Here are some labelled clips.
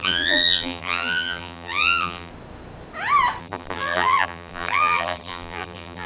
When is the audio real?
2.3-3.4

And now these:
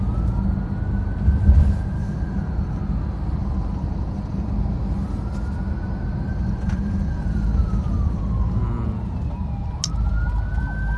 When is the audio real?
0.0-2.0; 2.8-3.4; 4.5-6.3; 8.6-11.0

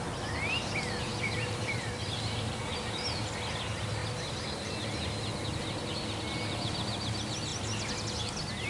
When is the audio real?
0.0-1.1; 2.9-8.7

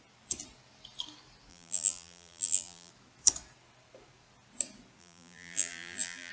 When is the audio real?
0.0-1.5; 2.9-5.0

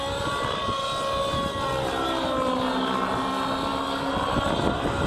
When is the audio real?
0.0-5.1